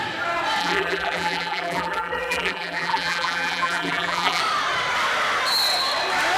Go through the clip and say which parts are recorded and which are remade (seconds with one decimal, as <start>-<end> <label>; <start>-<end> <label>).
0.0-0.6 recorded; 0.6-4.4 remade; 4.4-6.4 recorded

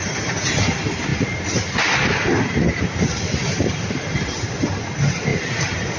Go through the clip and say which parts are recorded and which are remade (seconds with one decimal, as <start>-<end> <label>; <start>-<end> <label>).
0.0-5.3 recorded; 5.3-6.0 remade